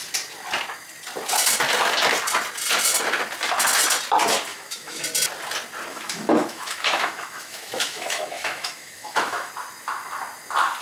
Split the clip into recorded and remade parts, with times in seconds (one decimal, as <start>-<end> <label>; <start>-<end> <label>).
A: 0.0-4.5 recorded; 4.5-5.0 remade; 5.0-5.9 recorded; 5.9-9.5 remade; 9.5-10.8 recorded